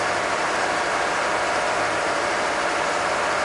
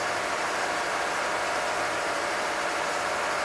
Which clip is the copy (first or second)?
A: first